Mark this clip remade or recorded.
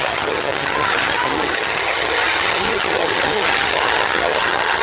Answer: remade